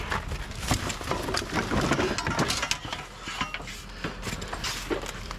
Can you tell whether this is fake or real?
real